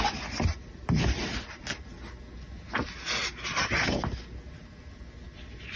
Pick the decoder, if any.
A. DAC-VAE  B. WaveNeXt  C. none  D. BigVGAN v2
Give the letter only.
C